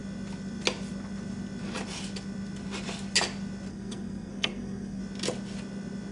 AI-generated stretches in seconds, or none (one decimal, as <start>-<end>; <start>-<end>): 3.7-5.0